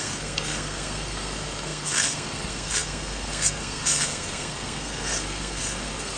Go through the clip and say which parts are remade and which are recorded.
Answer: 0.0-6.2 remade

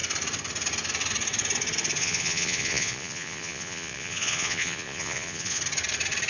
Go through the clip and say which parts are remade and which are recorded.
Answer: 0.0-2.0 recorded; 2.0-5.6 remade; 5.6-6.3 recorded